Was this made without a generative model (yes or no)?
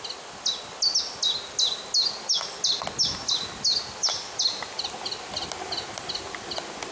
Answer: yes